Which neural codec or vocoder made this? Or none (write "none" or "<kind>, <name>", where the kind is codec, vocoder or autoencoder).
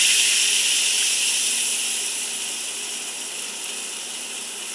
none